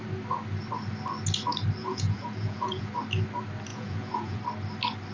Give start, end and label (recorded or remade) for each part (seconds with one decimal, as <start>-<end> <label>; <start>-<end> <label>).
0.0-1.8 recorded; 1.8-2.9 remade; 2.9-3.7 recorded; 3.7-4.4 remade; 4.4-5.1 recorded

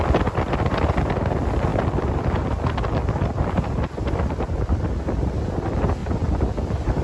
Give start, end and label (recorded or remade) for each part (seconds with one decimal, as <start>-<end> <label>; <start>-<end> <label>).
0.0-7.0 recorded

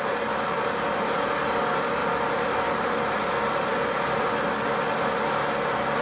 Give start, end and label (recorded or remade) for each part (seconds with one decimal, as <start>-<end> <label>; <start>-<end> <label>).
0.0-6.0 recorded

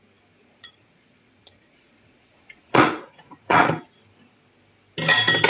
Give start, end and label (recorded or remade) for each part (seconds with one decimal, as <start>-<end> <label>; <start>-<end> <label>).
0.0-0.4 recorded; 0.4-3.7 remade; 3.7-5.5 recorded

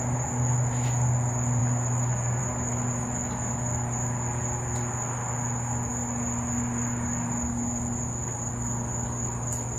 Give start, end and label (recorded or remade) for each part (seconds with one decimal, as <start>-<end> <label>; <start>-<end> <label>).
0.0-9.8 recorded

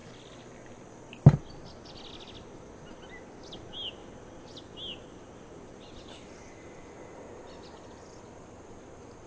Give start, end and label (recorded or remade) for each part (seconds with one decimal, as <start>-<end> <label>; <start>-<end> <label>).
0.0-9.3 recorded

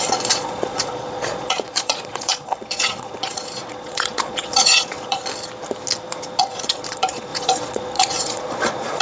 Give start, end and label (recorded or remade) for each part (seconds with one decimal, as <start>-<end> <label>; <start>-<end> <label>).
0.0-5.2 remade; 5.2-6.4 recorded; 6.4-9.0 remade